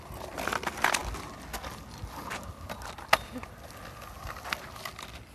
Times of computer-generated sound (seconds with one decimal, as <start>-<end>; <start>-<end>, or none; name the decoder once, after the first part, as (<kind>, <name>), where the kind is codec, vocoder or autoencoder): none